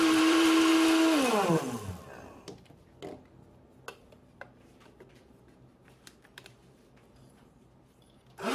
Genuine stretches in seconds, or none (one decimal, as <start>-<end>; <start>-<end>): 0.7-4.1